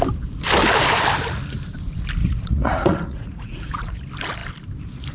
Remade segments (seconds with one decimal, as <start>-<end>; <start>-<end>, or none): 2.2-4.0